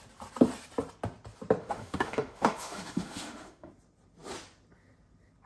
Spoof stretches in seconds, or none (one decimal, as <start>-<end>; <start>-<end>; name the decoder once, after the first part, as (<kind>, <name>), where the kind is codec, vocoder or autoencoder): 1.6-3.7 (autoencoder, DAC-VAE)